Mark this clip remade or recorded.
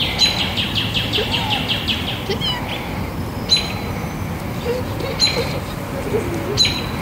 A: recorded